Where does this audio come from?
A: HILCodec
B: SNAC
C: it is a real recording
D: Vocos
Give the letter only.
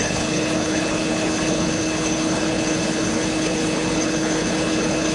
A